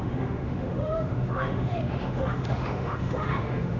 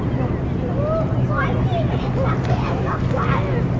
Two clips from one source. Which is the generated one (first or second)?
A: first